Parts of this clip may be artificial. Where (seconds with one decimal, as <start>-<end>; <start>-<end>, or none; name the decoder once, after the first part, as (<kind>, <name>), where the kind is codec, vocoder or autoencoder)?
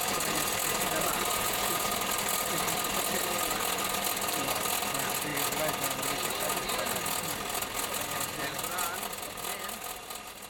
1.3-1.9 (vocoder, Vocos)